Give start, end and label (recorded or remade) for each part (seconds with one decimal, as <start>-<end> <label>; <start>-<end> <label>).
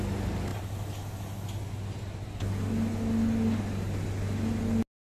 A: 0.0-5.1 recorded